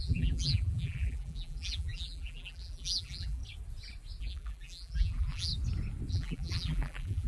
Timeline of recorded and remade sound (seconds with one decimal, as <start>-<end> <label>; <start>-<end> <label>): 0.0-3.4 remade; 3.4-4.2 recorded; 4.2-5.5 remade; 5.5-6.1 recorded; 6.1-7.3 remade